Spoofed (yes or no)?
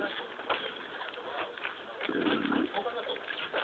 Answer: no